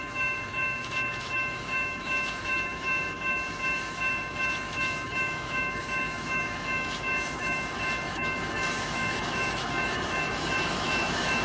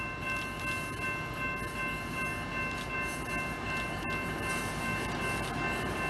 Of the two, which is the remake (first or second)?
first